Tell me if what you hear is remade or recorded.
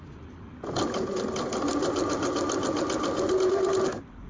recorded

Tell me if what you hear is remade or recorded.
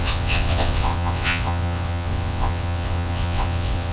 remade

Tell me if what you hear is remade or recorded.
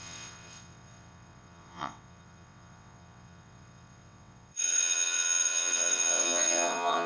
remade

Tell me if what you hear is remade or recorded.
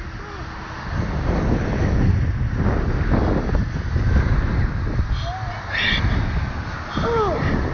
recorded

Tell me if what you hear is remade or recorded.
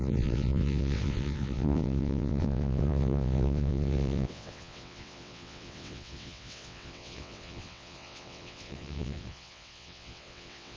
remade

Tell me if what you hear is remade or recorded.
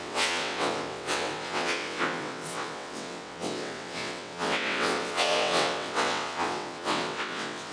remade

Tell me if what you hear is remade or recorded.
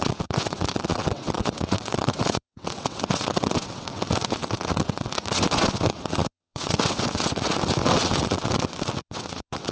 remade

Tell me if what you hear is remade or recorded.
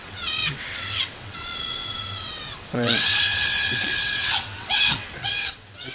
remade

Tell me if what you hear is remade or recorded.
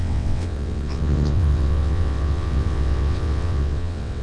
remade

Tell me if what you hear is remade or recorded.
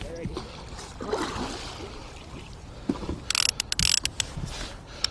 recorded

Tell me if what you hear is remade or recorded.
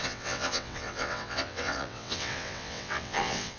remade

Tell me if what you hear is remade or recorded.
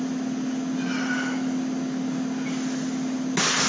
recorded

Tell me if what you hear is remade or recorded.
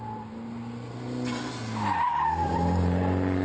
recorded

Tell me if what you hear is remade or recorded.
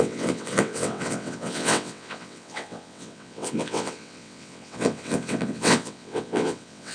remade